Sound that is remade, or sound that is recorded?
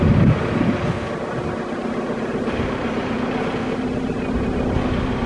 recorded